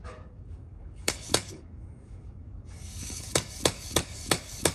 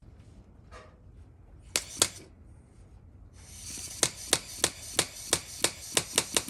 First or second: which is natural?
second